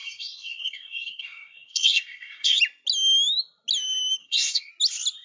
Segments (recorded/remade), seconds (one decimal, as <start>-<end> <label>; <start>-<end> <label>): 0.0-2.6 remade; 2.6-4.2 recorded; 4.2-4.7 remade; 4.7-5.2 recorded